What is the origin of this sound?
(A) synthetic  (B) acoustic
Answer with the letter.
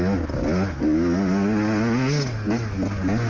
B